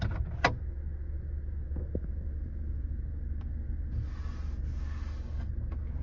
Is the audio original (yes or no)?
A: yes